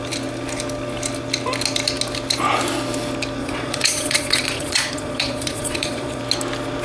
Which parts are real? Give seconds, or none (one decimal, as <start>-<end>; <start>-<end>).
0.0-3.4; 6.2-6.8